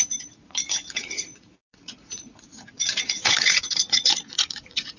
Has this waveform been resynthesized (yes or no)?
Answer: yes